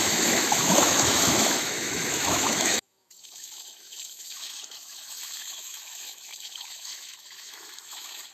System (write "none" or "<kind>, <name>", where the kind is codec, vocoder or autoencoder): autoencoder, DAC-VAE